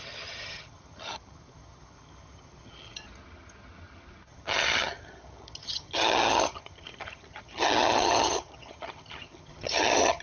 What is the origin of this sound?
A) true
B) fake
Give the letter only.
B